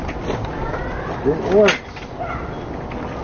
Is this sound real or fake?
real